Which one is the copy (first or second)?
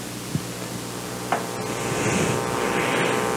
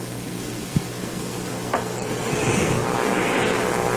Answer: second